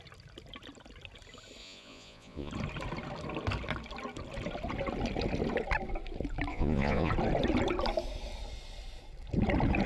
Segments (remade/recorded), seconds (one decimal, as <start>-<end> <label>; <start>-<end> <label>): 0.0-1.6 recorded; 1.6-2.5 remade; 2.5-6.5 recorded; 6.5-7.1 remade; 7.1-9.9 recorded